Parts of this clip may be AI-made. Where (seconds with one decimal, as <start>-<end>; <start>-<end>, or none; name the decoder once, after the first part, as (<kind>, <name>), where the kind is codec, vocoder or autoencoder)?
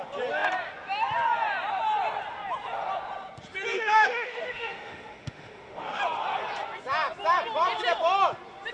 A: 3.7-6.0 (autoencoder, DAC-VAE)